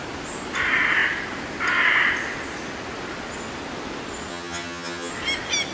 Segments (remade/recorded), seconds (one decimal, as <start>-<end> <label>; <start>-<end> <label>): 0.0-4.3 recorded; 4.3-5.1 remade; 5.1-5.7 recorded